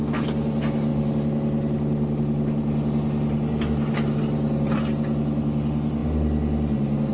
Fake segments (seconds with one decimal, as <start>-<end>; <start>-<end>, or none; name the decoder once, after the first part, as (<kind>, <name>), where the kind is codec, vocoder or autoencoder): none